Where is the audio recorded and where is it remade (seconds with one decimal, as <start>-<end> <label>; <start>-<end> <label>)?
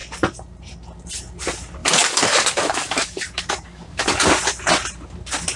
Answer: 0.0-1.8 recorded; 1.8-4.2 remade; 4.2-5.6 recorded